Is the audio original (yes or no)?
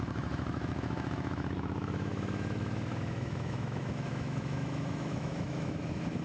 no